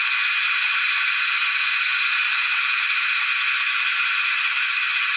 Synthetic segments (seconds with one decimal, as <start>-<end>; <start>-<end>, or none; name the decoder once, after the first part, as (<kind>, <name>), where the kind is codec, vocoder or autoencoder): none